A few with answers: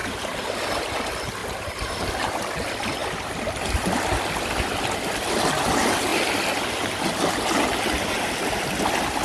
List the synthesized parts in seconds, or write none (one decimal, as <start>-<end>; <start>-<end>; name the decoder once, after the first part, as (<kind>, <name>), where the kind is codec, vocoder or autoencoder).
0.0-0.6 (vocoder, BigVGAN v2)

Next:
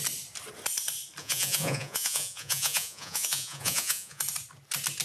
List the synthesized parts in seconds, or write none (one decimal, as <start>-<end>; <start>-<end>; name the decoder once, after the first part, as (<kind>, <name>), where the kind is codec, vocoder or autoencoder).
1.2-4.2 (vocoder, Vocos)

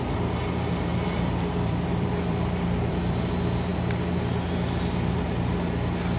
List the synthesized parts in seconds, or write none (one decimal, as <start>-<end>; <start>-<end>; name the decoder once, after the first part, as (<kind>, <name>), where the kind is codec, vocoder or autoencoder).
0.9-3.3 (vocoder, BigVGAN v2)

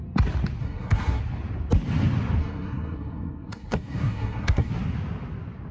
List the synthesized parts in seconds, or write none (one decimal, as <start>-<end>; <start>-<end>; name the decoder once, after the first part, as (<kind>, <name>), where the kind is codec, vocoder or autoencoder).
0.6-1.2 (codec, SNAC); 2.4-4.7